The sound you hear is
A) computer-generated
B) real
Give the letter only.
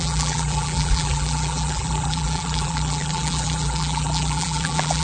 A